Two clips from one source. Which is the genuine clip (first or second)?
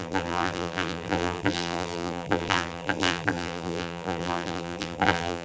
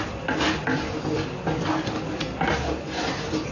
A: second